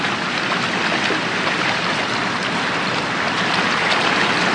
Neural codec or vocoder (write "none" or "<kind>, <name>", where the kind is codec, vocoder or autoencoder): none